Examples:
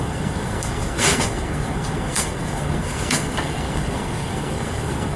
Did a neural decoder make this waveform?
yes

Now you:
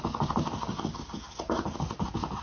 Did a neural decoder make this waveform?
no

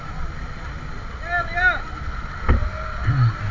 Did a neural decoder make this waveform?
no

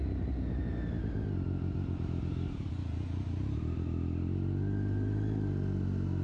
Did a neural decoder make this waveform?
no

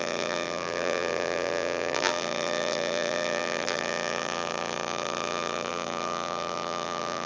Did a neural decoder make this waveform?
yes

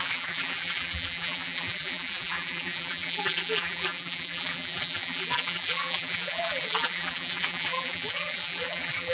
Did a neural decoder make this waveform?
yes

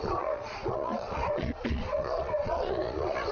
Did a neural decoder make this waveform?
yes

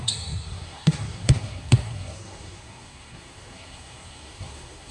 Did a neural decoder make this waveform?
yes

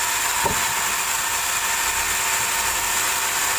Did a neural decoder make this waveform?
no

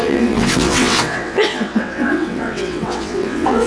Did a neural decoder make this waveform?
yes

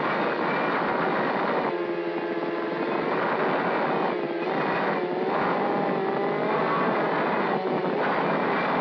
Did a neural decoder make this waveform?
no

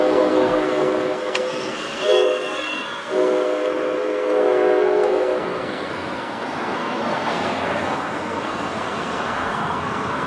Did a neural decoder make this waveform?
yes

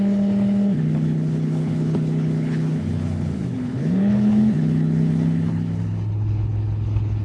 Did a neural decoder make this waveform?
yes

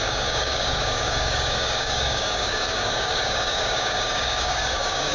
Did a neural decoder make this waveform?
yes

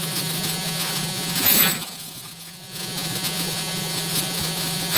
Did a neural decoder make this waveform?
yes